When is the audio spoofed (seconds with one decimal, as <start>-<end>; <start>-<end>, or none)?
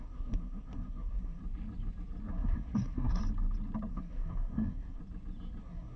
0.0-1.4; 2.3-3.2; 3.9-5.0; 5.6-6.0